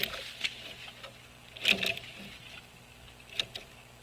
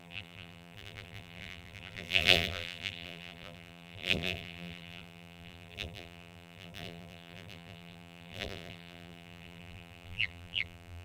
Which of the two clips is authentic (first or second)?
first